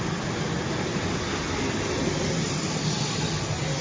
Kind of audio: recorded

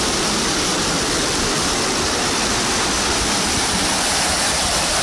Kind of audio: remade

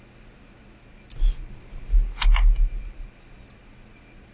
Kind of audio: recorded